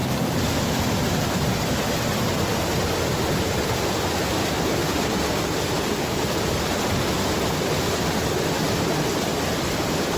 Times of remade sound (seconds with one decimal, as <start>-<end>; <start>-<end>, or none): none